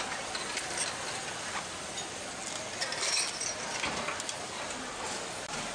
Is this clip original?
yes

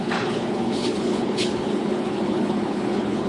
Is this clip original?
no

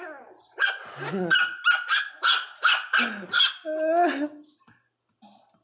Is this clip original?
yes